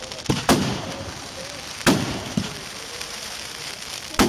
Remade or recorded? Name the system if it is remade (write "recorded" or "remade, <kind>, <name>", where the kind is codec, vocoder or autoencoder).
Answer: remade, vocoder, BigVGAN v2